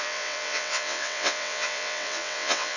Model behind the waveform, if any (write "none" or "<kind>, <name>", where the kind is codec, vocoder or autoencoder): vocoder, WaveNeXt